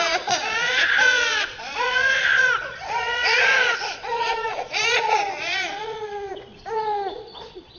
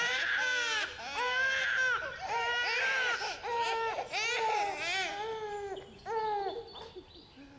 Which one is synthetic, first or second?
first